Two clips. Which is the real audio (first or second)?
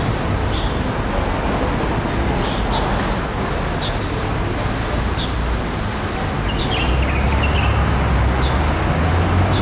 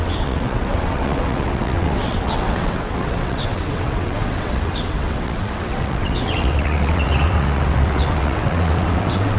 first